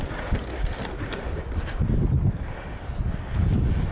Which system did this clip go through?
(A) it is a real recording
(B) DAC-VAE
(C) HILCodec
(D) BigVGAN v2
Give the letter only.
D